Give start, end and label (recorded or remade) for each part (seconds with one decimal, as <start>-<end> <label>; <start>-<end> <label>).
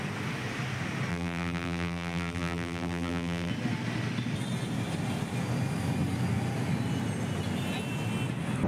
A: 0.0-1.1 recorded; 1.1-3.5 remade; 3.5-8.7 recorded